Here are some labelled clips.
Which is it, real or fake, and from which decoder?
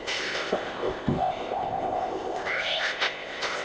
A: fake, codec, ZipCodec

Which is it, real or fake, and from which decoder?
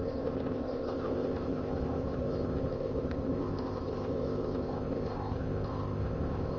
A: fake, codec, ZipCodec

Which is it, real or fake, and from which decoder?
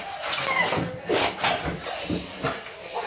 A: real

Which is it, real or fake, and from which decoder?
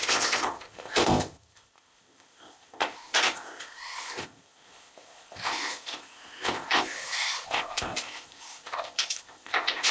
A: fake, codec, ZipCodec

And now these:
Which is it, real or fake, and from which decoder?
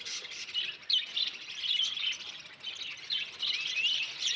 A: real